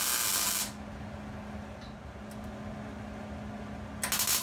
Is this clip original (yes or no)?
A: yes